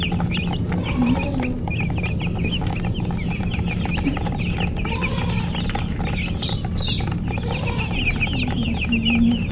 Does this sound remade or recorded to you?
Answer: recorded